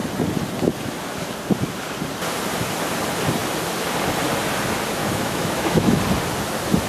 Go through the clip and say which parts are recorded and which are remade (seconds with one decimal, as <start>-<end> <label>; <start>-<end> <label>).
0.0-5.0 recorded; 5.0-6.0 remade; 6.0-6.9 recorded